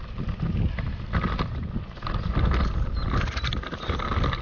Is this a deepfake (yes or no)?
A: no